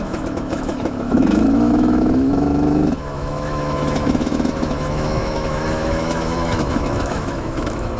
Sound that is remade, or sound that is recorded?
remade